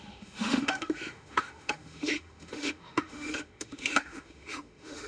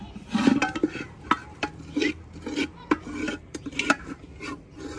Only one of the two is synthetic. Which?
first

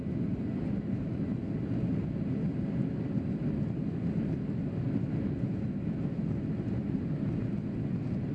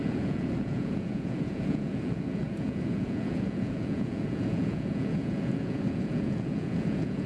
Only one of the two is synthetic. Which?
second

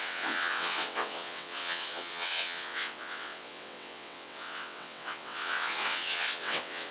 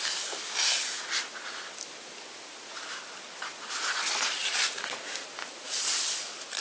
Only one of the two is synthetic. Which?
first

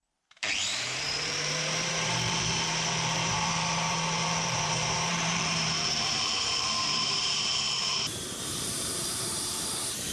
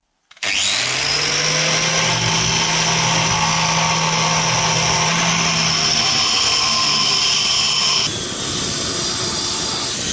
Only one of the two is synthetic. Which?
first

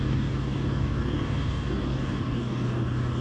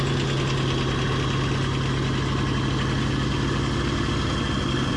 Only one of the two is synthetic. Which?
first